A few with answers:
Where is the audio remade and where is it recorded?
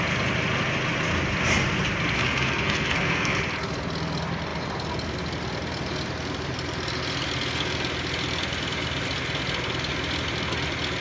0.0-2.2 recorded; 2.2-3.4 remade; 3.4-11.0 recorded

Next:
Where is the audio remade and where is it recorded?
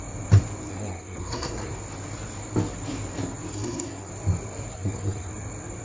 0.0-0.7 recorded; 0.7-1.7 remade; 1.7-3.5 recorded; 3.5-4.1 remade; 4.1-4.7 recorded; 4.7-5.3 remade; 5.3-5.8 recorded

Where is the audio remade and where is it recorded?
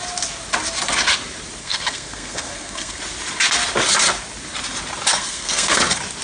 0.0-1.6 recorded; 1.6-3.0 remade; 3.0-5.1 recorded; 5.1-5.8 remade; 5.8-6.2 recorded